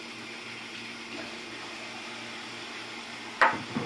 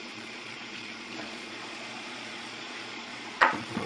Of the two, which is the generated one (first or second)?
second